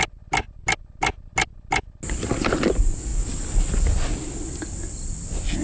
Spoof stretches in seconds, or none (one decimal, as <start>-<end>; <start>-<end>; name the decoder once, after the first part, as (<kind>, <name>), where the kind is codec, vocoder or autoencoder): none